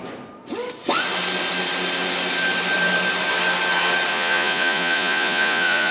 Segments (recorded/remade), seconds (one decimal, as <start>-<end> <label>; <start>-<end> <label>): 0.0-4.1 recorded; 4.1-5.9 remade